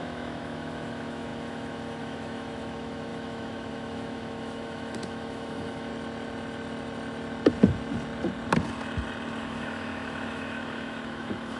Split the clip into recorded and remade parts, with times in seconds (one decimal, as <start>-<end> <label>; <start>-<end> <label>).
0.0-5.9 remade; 5.9-9.4 recorded; 9.4-11.6 remade